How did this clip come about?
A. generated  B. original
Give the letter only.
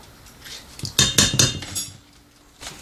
B